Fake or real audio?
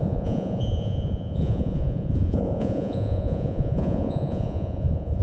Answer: fake